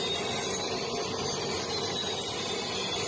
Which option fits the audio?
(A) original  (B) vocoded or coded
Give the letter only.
A